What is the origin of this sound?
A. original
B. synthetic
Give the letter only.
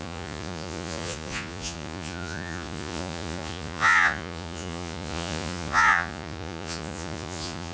B